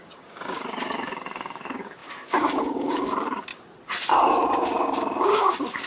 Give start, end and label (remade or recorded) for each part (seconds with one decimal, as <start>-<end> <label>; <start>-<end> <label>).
0.0-3.5 remade; 3.5-4.2 recorded; 4.2-5.9 remade